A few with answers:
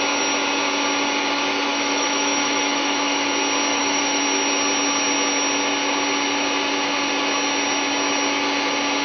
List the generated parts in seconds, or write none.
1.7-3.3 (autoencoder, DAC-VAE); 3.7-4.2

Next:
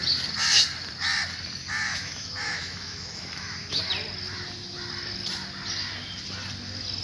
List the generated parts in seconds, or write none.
1.9-3.8 (autoencoder, DAC-VAE)

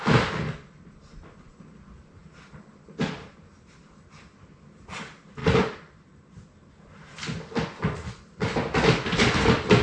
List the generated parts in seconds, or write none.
none